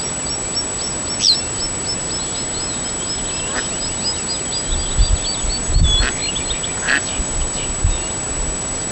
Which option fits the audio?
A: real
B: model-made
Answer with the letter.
A